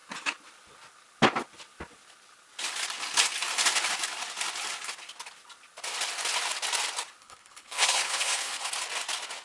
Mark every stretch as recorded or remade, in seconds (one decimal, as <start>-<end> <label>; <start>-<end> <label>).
0.0-7.2 recorded; 7.2-8.7 remade; 8.7-9.4 recorded